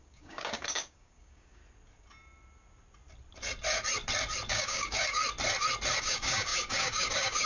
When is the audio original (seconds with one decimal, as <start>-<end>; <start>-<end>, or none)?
1.6-4.5; 5.2-6.0